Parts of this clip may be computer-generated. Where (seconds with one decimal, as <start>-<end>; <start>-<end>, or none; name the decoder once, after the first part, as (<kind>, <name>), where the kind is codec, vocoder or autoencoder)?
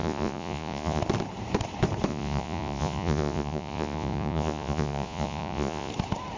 0.0-1.0 (vocoder, Vocos); 2.1-5.9